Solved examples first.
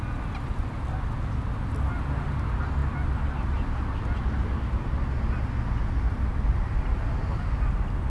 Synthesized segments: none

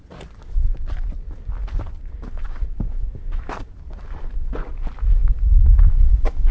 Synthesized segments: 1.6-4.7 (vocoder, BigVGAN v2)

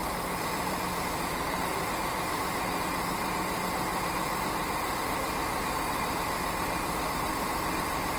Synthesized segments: 0.5-8.2 (vocoder, BigVGAN v2)

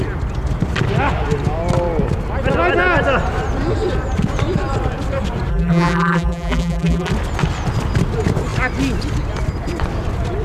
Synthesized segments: 5.5-7.1 (vocoder, BigVGAN v2)

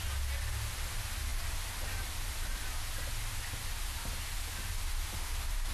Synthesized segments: none

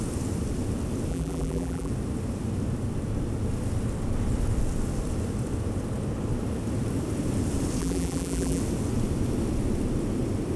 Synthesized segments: 1.1-1.9 (vocoder, BigVGAN v2); 7.8-8.6

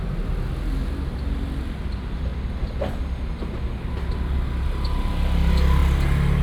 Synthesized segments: none